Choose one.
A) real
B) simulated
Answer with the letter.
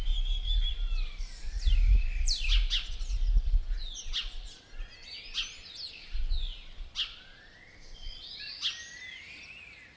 A